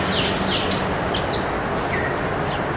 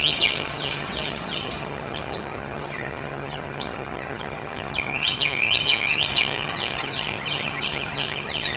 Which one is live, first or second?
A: first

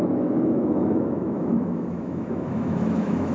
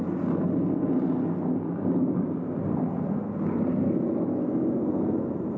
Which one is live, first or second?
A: second